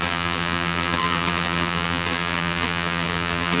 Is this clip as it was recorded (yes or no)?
no